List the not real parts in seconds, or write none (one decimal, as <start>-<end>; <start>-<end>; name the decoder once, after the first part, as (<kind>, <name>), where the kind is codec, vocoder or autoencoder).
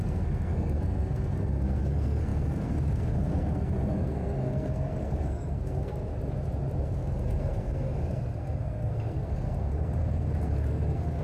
0.0-6.1 (codec, SNAC); 6.8-11.2